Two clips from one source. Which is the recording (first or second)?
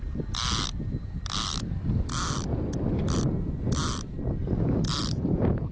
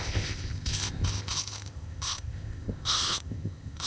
first